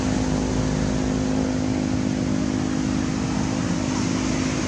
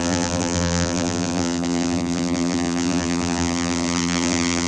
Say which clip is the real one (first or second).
first